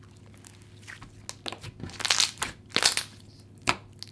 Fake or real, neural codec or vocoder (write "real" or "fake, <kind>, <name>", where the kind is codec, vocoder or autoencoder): real